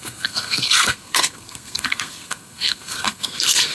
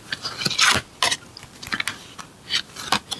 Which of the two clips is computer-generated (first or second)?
first